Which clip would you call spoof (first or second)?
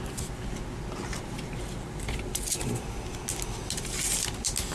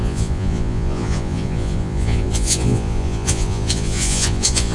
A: second